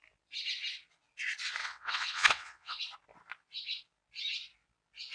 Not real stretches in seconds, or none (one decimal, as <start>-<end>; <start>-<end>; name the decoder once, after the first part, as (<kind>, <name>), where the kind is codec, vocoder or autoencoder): 1.6-2.8 (vocoder, WaveNeXt)